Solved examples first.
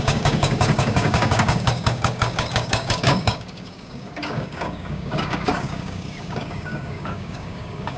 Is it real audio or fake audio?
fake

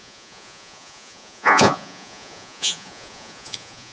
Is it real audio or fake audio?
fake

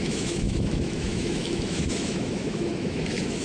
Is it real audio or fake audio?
fake